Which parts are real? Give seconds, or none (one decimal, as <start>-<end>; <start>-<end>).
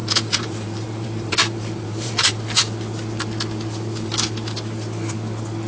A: 2.4-5.7